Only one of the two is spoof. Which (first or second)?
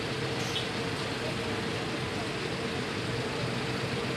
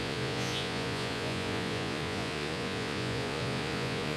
second